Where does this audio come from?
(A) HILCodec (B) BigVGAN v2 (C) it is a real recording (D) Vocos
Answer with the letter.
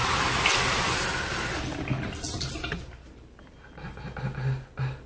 C